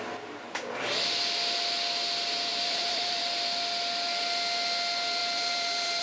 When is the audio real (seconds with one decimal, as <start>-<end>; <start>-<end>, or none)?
0.0-2.5; 3.2-5.2